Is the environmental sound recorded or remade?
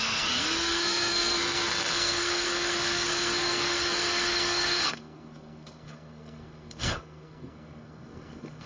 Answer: remade